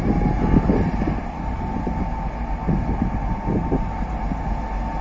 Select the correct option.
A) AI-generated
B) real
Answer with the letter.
B